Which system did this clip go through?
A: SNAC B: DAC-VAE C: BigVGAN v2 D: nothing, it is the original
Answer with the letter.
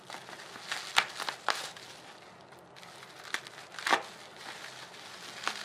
D